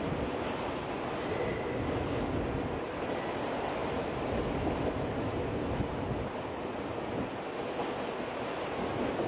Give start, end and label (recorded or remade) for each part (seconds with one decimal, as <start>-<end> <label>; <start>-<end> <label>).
0.0-9.3 recorded